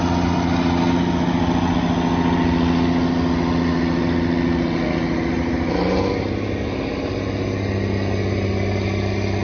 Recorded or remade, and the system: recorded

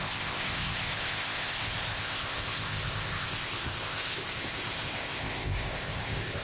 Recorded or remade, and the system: remade, codec, ZipCodec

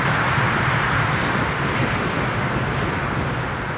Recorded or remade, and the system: recorded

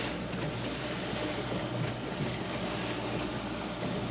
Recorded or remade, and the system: recorded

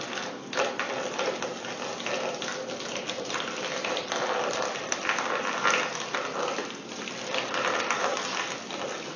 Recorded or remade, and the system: recorded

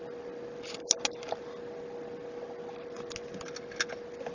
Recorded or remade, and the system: recorded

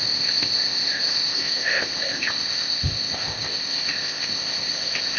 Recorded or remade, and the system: remade, codec, ZipCodec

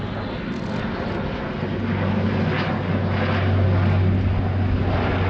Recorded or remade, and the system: recorded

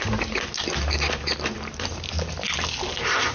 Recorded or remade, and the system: recorded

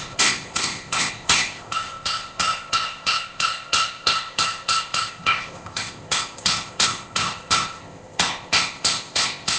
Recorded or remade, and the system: remade, codec, ZipCodec